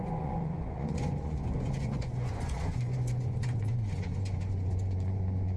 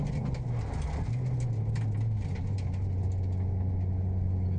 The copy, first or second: first